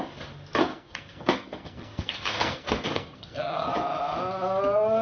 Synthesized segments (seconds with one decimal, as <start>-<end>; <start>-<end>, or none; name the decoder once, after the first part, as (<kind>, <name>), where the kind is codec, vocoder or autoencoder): 0.7-3.7 (codec, SNAC)